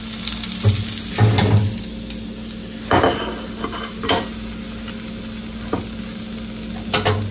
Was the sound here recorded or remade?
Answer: recorded